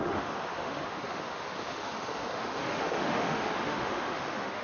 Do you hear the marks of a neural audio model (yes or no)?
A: yes